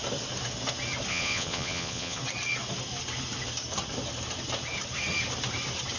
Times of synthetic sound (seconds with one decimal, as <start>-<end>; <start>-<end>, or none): 1.1-2.2